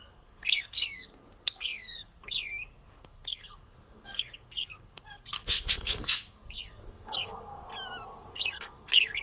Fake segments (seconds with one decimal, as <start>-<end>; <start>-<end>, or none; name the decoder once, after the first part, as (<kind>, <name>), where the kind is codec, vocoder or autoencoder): 0.0-7.7 (codec, SNAC); 8.3-9.2